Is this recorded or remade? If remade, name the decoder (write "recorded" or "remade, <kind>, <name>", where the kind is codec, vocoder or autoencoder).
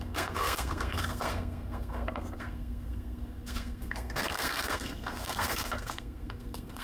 remade, codec, SNAC